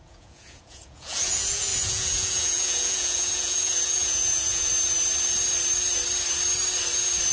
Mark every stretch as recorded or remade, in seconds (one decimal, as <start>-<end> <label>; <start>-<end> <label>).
0.0-4.7 remade; 4.7-7.3 recorded